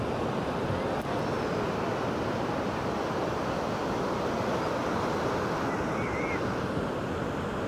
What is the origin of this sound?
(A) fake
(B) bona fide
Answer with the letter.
B